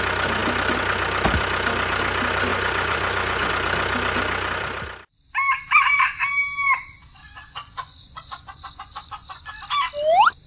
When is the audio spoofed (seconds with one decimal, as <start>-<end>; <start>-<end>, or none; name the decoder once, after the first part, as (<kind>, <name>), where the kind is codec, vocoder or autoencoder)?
2.5-3.5 (vocoder, Vocos); 7.2-9.5

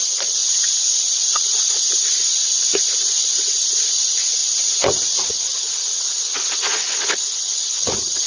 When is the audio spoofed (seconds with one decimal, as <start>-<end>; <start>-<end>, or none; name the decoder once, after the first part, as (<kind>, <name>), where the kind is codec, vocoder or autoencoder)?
0.0-0.4 (vocoder, Vocos); 1.0-2.3; 3.8-8.3

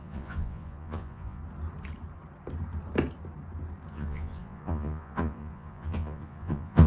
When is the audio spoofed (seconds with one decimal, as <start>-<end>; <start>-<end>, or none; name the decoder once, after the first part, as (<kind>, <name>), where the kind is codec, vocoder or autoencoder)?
0.0-1.4 (vocoder, Vocos); 3.9-6.9

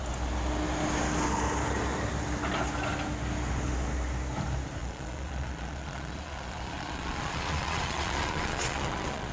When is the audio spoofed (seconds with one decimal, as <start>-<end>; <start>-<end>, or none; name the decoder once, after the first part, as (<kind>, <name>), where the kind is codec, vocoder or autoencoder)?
4.8-9.3 (vocoder, Vocos)